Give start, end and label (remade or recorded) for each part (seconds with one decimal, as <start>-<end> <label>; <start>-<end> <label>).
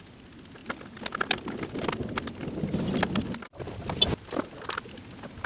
0.0-5.5 recorded